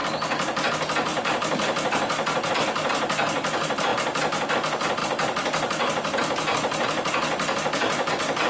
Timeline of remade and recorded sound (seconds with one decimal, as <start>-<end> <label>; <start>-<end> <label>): 0.0-8.5 recorded